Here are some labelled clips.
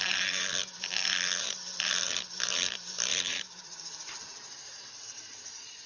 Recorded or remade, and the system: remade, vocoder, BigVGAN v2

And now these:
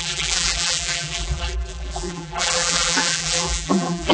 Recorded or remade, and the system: remade, vocoder, BigVGAN v2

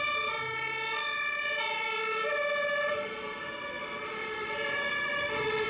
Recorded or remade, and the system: remade, vocoder, BigVGAN v2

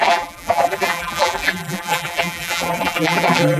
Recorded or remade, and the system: remade, vocoder, BigVGAN v2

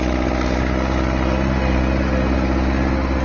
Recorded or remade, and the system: recorded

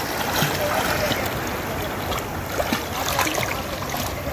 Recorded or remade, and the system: recorded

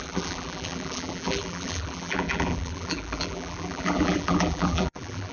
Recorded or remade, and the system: remade, vocoder, BigVGAN v2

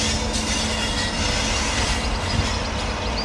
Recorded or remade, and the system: recorded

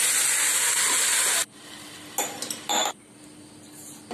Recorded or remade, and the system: recorded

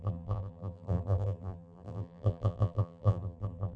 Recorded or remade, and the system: remade, vocoder, BigVGAN v2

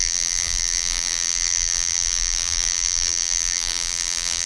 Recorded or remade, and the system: remade, vocoder, BigVGAN v2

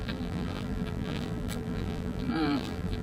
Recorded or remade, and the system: remade, vocoder, BigVGAN v2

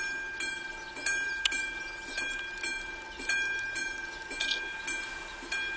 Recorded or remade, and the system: recorded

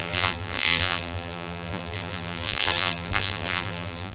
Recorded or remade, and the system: remade, vocoder, BigVGAN v2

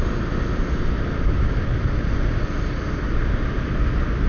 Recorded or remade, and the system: recorded